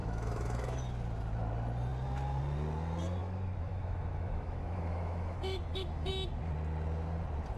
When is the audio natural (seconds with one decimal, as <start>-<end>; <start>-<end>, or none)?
0.8-3.2; 6.1-7.6